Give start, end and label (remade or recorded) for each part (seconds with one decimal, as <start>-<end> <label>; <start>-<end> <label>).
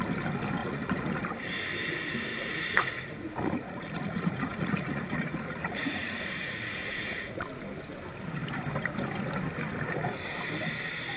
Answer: 0.0-0.6 recorded; 0.6-1.2 remade; 1.2-2.3 recorded; 2.3-7.4 remade; 7.4-11.2 recorded